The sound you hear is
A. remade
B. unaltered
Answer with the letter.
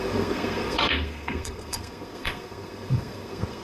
A